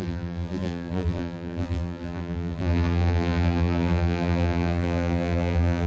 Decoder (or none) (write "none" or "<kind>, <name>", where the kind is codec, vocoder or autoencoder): vocoder, BigVGAN v2